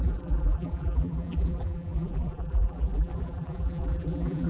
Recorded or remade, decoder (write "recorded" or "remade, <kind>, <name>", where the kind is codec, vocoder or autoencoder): remade, vocoder, BigVGAN v2